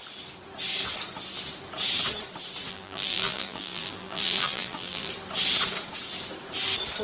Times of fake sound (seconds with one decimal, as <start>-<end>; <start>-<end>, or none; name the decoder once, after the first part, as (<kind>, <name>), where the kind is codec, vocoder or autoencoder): 2.7-5.1 (vocoder, BigVGAN v2)